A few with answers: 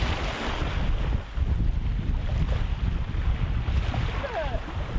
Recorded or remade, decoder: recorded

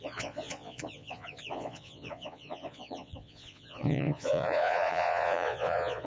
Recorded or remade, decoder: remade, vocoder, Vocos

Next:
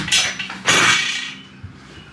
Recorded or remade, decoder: recorded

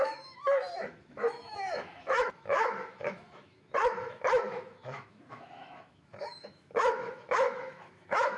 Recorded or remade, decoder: remade, autoencoder, DAC-VAE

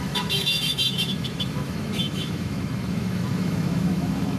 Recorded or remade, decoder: remade, autoencoder, DAC-VAE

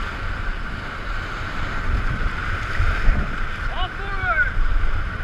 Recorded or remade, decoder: remade, vocoder, BigVGAN v2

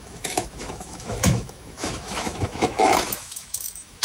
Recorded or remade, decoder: remade, autoencoder, DAC-VAE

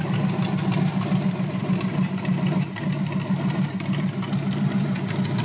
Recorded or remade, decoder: recorded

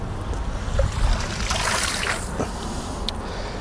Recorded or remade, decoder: recorded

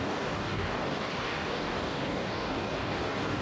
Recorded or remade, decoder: remade, codec, DAC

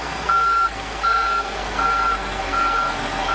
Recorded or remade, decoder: remade, codec, SNAC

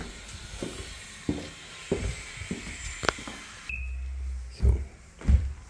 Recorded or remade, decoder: recorded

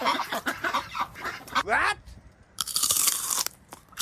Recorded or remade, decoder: remade, vocoder, BigVGAN v2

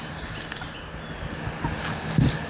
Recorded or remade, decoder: recorded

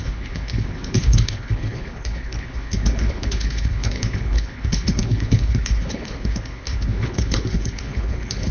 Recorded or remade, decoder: remade, codec, HILCodec